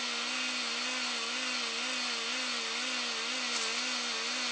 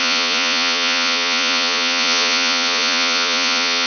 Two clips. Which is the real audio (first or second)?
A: first